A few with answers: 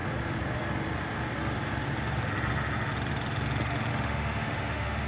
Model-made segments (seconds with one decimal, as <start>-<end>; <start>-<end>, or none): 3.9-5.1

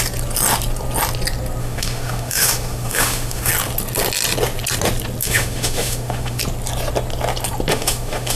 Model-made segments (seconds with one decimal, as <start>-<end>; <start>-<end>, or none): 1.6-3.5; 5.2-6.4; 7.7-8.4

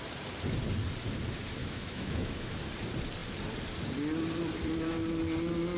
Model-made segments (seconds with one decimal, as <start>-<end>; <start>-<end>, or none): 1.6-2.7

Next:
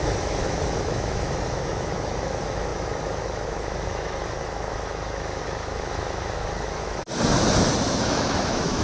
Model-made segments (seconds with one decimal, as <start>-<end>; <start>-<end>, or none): 0.0-7.0; 7.9-8.8

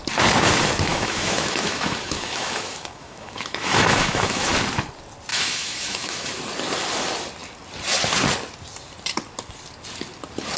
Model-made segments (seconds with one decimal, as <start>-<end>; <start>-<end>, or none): 0.9-4.5; 5.3-6.4